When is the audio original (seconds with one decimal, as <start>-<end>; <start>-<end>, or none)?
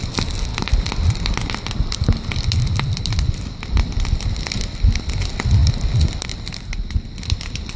0.0-0.5; 4.4-5.6; 6.6-7.8